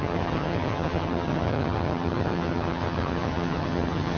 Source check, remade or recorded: remade